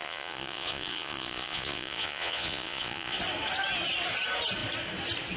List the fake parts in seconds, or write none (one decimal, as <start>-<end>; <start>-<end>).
0.0-3.2